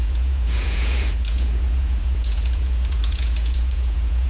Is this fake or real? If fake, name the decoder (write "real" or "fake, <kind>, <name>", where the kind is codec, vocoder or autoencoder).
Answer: fake, vocoder, Vocos